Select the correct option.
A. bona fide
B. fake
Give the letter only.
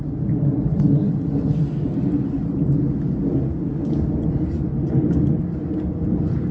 A